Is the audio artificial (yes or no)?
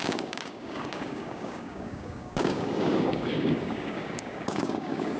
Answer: yes